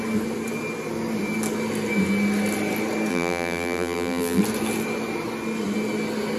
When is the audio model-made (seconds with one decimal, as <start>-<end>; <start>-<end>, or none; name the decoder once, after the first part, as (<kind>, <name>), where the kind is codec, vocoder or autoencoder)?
3.1-4.4 (vocoder, BigVGAN v2)